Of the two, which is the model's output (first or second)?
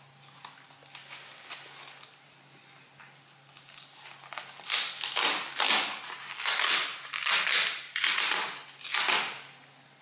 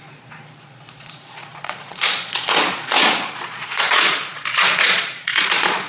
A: second